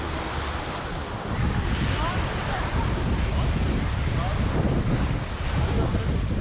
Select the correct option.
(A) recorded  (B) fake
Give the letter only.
A